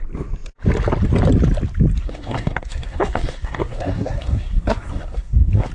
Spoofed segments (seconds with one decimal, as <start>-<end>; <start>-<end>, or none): 2.0-5.7